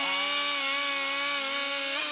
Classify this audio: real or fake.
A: real